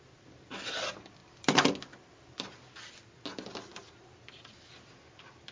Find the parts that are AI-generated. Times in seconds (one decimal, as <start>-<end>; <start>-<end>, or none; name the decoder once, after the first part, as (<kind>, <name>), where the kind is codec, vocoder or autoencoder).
none